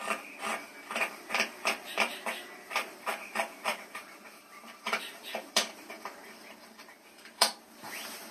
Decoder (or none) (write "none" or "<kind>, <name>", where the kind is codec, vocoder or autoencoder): vocoder, BigVGAN v2